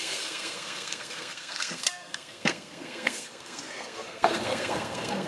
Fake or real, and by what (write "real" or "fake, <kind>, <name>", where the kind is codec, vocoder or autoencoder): fake, codec, SNAC